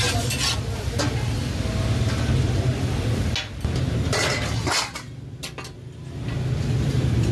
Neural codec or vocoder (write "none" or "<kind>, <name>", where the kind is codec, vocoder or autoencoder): none